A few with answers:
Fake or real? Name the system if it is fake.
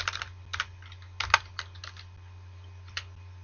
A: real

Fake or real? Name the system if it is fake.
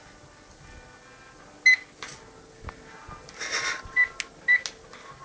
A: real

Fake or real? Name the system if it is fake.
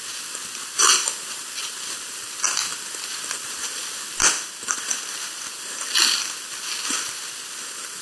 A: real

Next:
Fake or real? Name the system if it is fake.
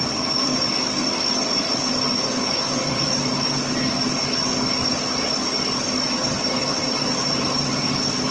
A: real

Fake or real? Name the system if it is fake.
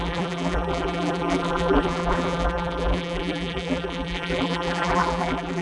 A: fake, vocoder, BigVGAN v2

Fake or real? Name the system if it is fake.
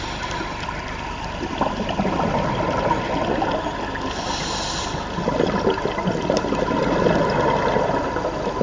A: real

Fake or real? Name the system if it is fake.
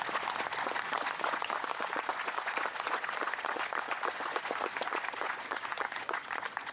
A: fake, vocoder, Vocos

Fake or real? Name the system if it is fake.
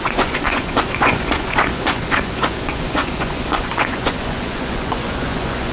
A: fake, vocoder, Vocos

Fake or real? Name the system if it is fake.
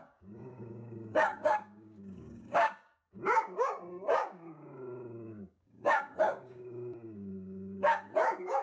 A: fake, codec, DAC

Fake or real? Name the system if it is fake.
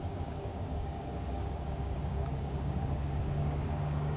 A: fake, codec, DAC